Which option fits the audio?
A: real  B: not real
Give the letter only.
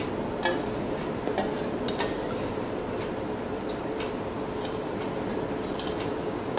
A